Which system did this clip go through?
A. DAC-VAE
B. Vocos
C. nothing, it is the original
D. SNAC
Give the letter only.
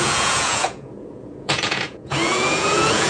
B